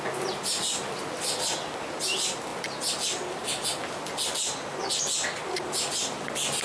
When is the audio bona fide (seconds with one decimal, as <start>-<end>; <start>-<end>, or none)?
0.0-6.6